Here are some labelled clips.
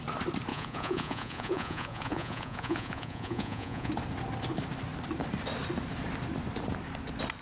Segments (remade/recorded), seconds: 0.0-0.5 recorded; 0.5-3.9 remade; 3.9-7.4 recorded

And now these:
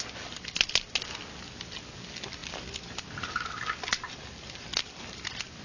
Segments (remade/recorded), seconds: 0.0-5.6 recorded

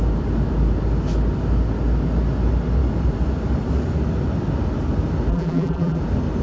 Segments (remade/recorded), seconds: 0.0-5.3 recorded; 5.3-6.0 remade; 6.0-6.4 recorded

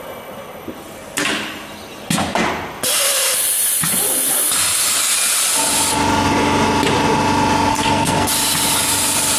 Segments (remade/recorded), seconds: 0.0-7.7 recorded; 7.7-8.3 remade; 8.3-9.4 recorded